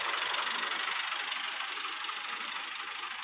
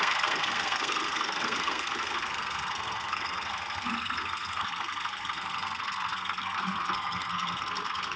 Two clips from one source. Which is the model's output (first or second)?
second